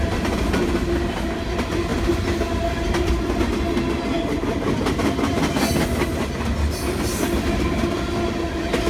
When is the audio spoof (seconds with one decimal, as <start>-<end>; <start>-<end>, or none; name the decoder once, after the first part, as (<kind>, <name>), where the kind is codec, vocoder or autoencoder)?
none

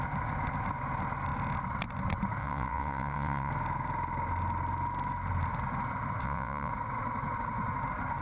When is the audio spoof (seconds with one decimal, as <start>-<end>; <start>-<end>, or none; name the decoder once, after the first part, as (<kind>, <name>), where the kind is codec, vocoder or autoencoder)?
2.4-3.5 (vocoder, WaveNeXt); 6.2-6.7

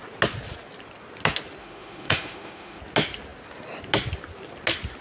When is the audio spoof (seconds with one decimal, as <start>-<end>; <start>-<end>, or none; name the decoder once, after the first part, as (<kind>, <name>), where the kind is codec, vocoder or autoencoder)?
1.6-2.8 (autoencoder, DAC-VAE)

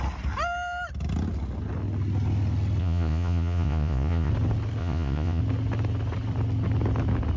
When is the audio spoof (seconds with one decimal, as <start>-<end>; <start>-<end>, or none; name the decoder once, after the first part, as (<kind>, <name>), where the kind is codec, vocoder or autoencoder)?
2.8-4.3 (vocoder, Vocos); 4.8-5.4

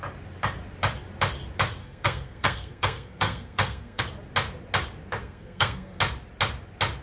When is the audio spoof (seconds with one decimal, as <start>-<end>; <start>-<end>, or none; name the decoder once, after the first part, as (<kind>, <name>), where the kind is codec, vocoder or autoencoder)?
1.8-4.0 (codec, SNAC); 5.2-6.0

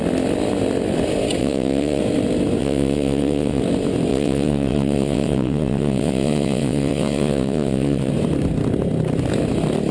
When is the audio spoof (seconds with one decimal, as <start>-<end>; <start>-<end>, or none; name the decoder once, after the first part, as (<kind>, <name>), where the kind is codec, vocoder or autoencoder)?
1.4-2.0 (vocoder, WaveNeXt); 2.6-3.6; 4.1-8.1